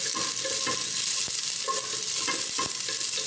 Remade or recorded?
recorded